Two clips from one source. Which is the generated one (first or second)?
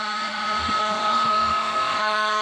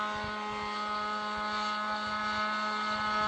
first